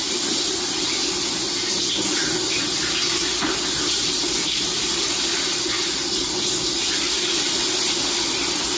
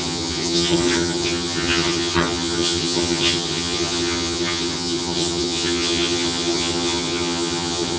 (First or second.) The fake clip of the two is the second